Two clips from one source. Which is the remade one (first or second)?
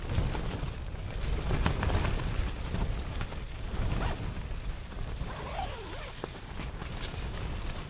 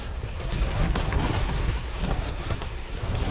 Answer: second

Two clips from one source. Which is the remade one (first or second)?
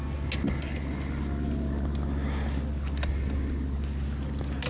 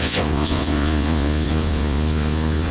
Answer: second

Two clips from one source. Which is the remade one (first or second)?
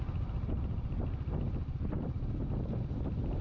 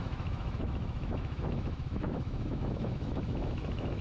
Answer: second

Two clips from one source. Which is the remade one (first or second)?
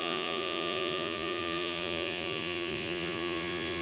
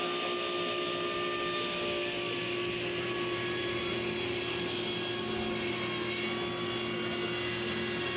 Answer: first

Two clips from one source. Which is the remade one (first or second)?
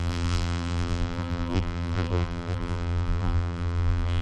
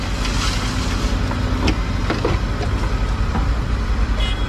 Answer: first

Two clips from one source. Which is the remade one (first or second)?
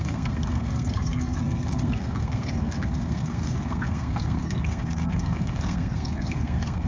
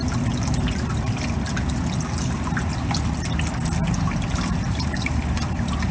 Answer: first